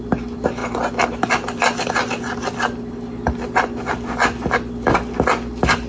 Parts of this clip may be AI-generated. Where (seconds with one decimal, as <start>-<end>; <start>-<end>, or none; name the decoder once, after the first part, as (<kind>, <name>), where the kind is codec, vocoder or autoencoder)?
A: none